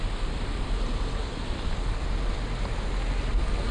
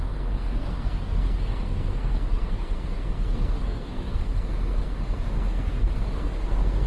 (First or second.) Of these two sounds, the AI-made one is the second